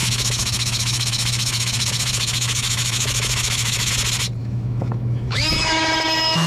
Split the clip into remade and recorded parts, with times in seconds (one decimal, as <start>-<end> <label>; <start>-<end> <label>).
0.0-3.9 remade; 3.9-4.4 recorded; 4.4-6.5 remade

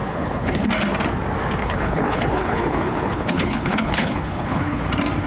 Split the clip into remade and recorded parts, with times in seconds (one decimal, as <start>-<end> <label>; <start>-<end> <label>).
0.0-0.7 remade; 0.7-1.6 recorded; 1.6-4.8 remade; 4.8-5.3 recorded

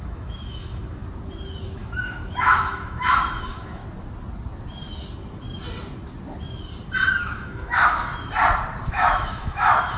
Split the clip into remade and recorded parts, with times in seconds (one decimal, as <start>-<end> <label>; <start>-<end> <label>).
0.0-1.0 remade; 1.0-1.8 recorded; 1.8-3.8 remade; 3.8-7.2 recorded; 7.2-8.1 remade; 8.1-8.9 recorded; 8.9-10.0 remade

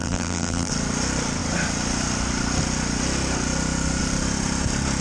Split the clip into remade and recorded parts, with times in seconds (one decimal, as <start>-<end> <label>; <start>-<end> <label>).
0.0-0.7 remade; 0.7-5.0 recorded

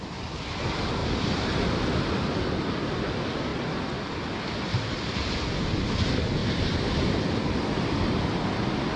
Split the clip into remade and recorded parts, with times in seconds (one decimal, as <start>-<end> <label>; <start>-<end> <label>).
0.0-1.0 recorded; 1.0-2.5 remade; 2.5-4.7 recorded; 4.7-5.6 remade; 5.6-6.4 recorded; 6.4-8.1 remade; 8.1-9.0 recorded